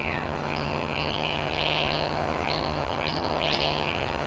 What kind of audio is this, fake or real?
fake